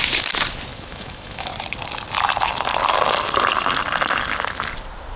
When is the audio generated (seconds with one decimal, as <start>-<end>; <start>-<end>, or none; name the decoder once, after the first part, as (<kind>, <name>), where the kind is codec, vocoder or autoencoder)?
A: 0.7-1.5 (autoencoder, DAC-VAE)